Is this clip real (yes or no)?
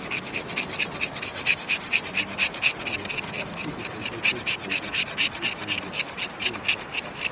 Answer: yes